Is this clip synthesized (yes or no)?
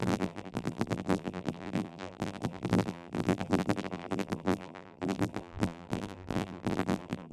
yes